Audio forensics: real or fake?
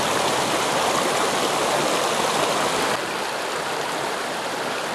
real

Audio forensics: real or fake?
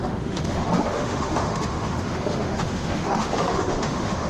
fake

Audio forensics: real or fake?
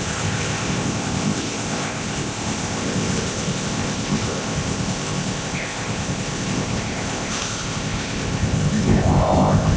fake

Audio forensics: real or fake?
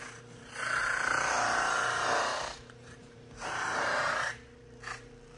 fake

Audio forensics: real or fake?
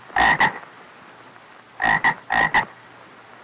real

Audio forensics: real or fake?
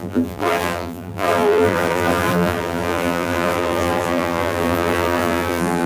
fake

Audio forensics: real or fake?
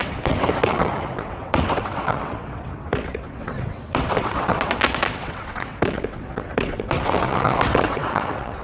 fake